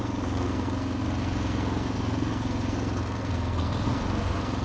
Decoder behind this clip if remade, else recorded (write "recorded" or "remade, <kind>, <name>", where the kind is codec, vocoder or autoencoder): remade, codec, SNAC